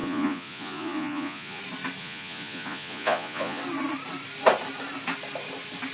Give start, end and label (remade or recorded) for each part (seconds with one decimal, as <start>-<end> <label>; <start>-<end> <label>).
0.0-1.6 remade; 1.6-2.0 recorded; 2.0-3.6 remade; 3.6-5.9 recorded